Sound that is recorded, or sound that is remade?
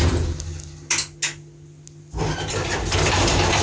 recorded